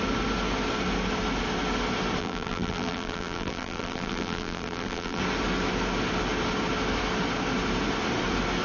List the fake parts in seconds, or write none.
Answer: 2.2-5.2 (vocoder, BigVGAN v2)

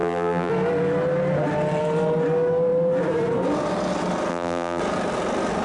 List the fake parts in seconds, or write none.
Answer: 0.0-0.5 (vocoder, BigVGAN v2); 4.3-4.8

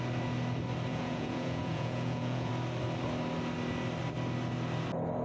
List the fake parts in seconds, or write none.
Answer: 0.9-2.5 (vocoder, Vocos)

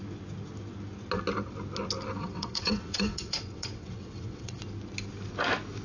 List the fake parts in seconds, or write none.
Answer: 2.2-4.6 (vocoder, WaveNeXt)

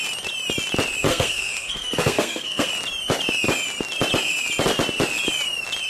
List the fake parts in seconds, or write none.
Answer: 1.1-2.7 (codec, SNAC)